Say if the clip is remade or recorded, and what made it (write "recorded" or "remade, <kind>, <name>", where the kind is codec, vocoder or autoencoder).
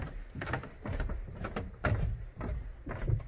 recorded